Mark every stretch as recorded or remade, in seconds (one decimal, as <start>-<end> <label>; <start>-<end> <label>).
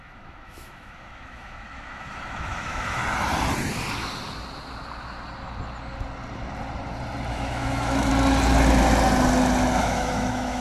0.0-3.0 remade; 3.0-7.3 recorded; 7.3-8.1 remade; 8.1-9.8 recorded; 9.8-10.6 remade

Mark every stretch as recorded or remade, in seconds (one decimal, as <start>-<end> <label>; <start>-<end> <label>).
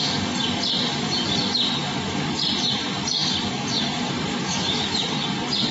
0.0-4.4 recorded; 4.4-5.0 remade; 5.0-5.7 recorded